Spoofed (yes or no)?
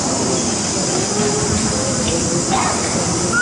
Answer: no